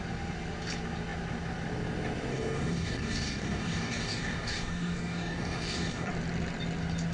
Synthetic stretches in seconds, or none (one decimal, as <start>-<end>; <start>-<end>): 2.3-6.1